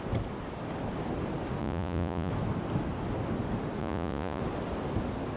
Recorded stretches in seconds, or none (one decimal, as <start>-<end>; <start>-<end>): 0.0-1.6; 2.3-3.8; 4.4-5.4